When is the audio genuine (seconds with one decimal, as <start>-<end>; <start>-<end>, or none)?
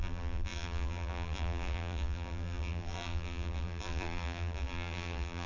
none